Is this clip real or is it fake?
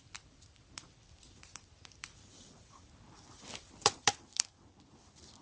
fake